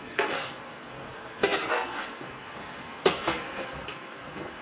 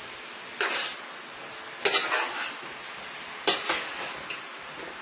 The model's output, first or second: first